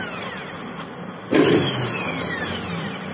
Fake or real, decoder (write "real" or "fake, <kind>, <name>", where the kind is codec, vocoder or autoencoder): real